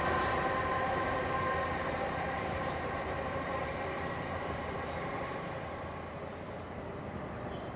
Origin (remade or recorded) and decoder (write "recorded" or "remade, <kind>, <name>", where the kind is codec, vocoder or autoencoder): remade, vocoder, BigVGAN v2